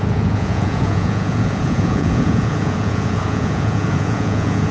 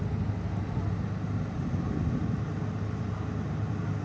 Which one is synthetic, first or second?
first